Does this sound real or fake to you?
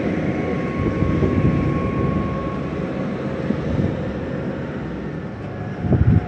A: real